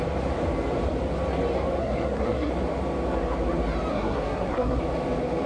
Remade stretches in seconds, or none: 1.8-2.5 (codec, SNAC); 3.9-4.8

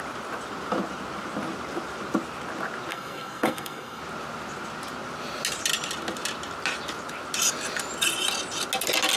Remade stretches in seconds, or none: 2.9-4.0 (codec, SNAC)

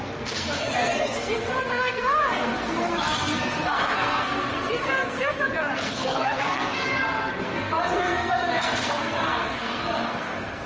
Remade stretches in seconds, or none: 0.0-10.7 (codec, SNAC)

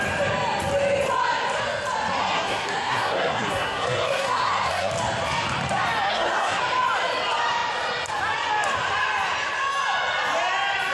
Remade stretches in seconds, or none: 2.2-4.9 (codec, SNAC); 6.1-6.6

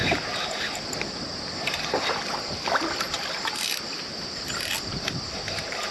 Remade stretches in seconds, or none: none

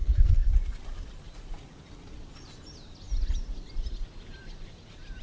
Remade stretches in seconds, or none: 0.0-0.5 (codec, SNAC)